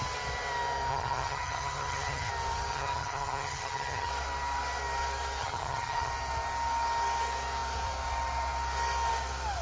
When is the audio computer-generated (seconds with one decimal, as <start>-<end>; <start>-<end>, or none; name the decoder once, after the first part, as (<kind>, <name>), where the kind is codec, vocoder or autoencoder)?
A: 0.9-2.3 (vocoder, HiFi-GAN); 2.7-4.1; 5.4-6.1